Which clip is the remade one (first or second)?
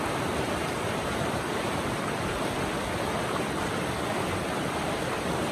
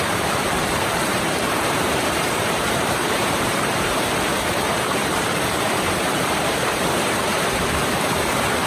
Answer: second